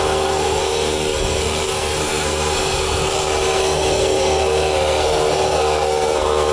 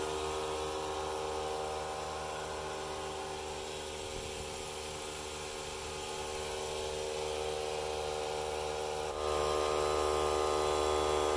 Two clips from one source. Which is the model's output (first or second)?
first